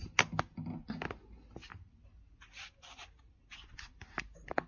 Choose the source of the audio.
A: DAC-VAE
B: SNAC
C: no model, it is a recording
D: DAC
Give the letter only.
C